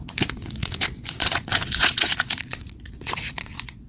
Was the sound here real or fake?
fake